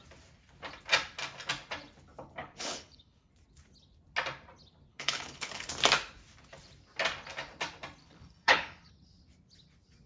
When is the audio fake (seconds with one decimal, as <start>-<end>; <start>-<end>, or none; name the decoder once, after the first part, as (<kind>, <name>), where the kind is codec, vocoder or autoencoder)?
2.4-3.3 (codec, HILCodec); 4.9-5.7; 8.0-8.9